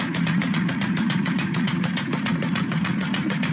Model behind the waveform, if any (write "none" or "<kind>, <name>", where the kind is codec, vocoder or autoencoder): vocoder, Vocos